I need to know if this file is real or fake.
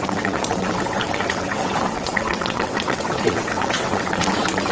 fake